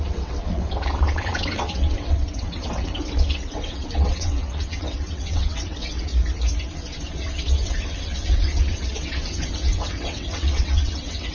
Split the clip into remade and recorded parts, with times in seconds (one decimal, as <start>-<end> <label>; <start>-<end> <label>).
0.0-6.1 remade; 6.1-7.2 recorded; 7.2-11.3 remade